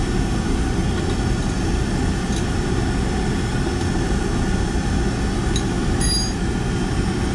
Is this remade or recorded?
recorded